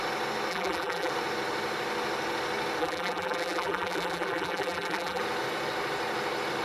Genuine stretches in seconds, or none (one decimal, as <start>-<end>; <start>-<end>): 0.0-0.5; 1.1-2.8; 5.2-6.6